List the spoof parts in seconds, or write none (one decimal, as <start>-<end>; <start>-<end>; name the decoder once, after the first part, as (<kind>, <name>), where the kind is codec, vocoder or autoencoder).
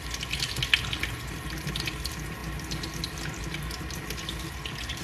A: none